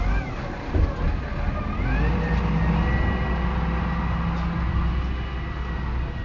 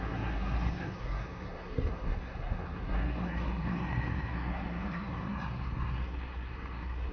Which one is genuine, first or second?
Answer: first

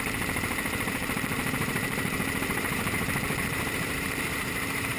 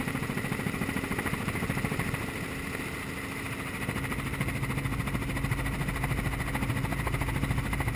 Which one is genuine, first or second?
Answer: second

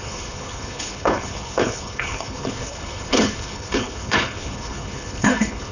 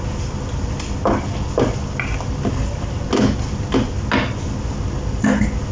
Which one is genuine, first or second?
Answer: second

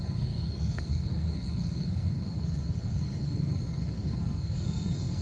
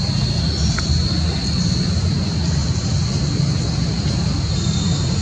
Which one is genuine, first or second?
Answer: second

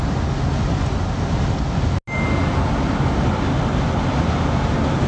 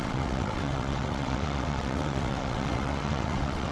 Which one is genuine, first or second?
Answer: first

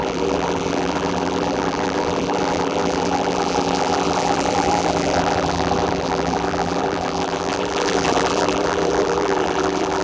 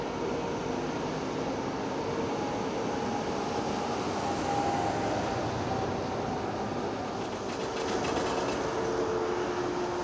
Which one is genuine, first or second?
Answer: second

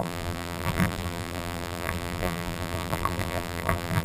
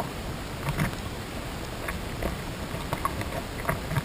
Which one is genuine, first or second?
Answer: second